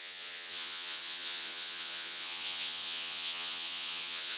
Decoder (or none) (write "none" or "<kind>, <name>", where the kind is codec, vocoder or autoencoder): vocoder, Vocos